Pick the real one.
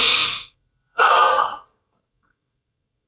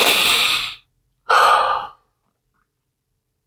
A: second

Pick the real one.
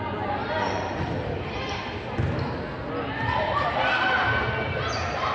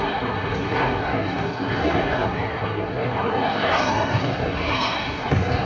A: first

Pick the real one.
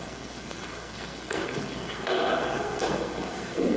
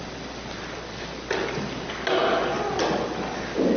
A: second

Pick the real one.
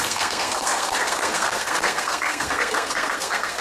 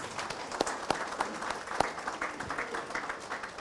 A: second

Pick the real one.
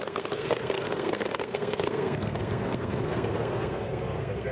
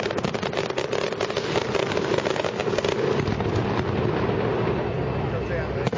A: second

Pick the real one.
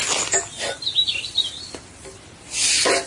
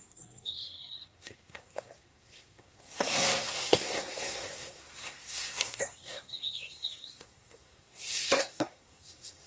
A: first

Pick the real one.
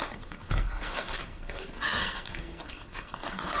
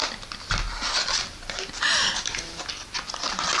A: second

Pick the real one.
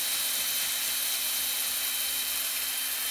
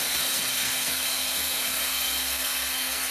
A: first